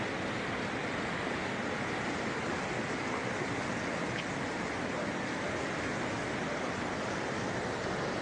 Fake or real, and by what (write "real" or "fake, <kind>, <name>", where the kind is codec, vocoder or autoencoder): real